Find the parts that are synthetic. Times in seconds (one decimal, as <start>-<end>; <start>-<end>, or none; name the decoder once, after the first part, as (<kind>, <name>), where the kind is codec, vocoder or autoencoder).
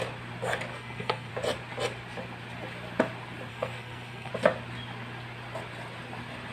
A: 0.7-1.3 (codec, SNAC); 3.5-4.3